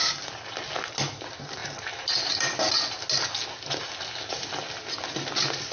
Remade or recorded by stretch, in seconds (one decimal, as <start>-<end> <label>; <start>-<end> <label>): 0.0-5.7 recorded